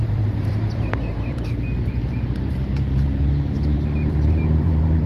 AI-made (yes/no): yes